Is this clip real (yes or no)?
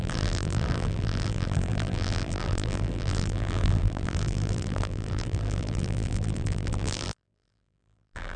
no